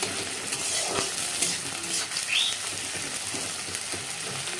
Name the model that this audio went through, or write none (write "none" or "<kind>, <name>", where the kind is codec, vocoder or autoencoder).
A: none